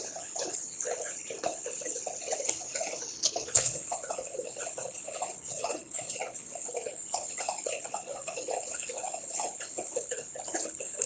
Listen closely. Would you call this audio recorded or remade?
remade